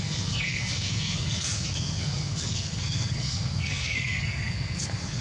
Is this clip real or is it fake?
fake